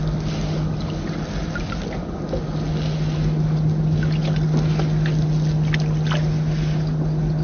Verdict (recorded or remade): recorded